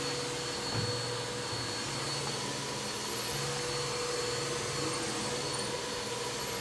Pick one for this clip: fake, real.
real